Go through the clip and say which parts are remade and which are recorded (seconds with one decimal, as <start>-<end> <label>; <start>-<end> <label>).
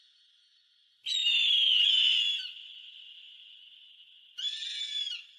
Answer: 0.0-5.4 recorded